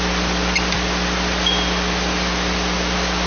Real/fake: real